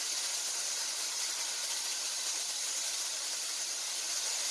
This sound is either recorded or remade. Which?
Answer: recorded